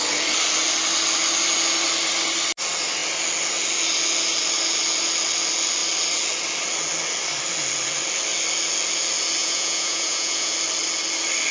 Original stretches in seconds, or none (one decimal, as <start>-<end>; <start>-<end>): 0.0-9.4; 10.5-11.5